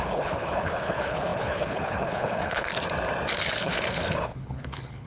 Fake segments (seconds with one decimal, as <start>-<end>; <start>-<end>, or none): 0.0-2.7; 3.6-5.1